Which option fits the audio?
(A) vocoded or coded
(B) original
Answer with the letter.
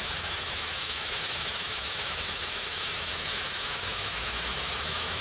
A